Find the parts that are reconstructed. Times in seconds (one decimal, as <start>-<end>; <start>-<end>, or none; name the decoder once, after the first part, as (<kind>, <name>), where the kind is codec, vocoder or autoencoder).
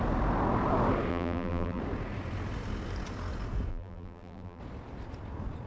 1.1-1.8 (vocoder, BigVGAN v2); 3.7-4.6